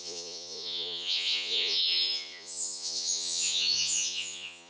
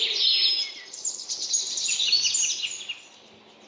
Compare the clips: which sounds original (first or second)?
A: second